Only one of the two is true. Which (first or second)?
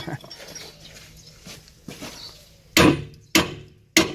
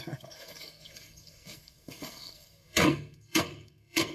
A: first